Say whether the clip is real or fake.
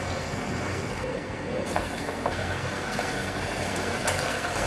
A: fake